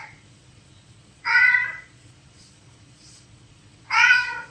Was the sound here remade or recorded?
remade